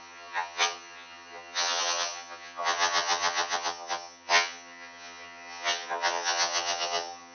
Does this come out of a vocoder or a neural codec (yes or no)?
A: yes